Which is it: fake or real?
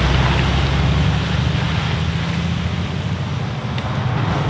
real